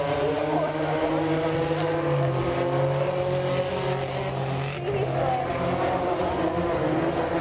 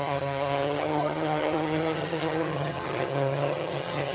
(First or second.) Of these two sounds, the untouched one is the first